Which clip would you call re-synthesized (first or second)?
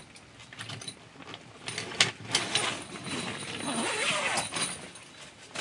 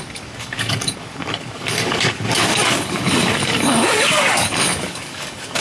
second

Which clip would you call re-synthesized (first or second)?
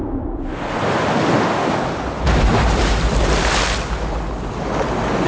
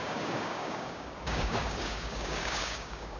second